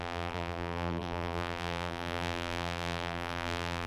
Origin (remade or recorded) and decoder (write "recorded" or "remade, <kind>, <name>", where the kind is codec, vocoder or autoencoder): remade, vocoder, BigVGAN v2